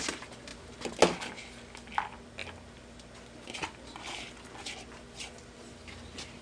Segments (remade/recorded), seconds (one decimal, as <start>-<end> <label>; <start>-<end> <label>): 0.0-6.4 recorded